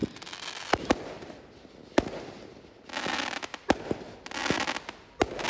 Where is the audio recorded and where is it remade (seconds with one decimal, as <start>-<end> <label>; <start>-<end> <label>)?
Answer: 0.0-5.5 recorded